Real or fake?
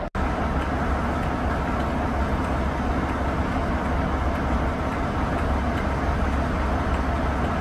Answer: real